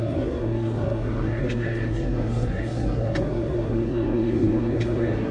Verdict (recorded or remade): remade